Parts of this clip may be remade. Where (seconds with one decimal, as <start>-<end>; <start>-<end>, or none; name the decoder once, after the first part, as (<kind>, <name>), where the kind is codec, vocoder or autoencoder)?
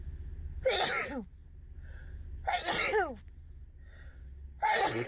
4.1-5.1 (vocoder, WaveNeXt)